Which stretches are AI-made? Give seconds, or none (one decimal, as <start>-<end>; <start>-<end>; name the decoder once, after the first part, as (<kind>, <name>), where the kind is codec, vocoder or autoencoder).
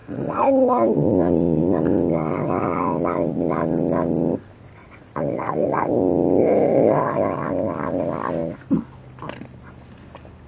0.0-1.6 (vocoder, Vocos); 4.8-5.9